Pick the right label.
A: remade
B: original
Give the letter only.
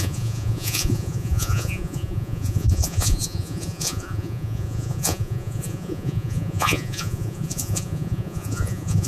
A